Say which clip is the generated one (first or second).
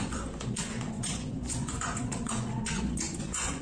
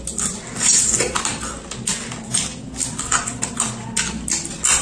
first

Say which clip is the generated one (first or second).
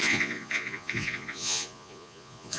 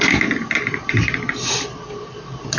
first